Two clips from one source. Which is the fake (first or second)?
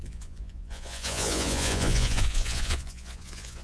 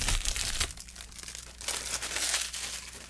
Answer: first